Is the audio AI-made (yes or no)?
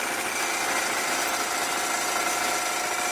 no